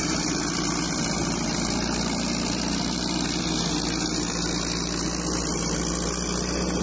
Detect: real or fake real